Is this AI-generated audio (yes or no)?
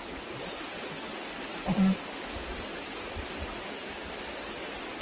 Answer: no